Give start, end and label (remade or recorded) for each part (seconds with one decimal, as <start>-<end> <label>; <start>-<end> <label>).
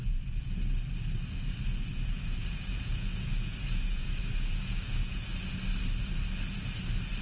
0.0-0.8 remade; 0.8-1.9 recorded; 1.9-5.2 remade; 5.2-7.2 recorded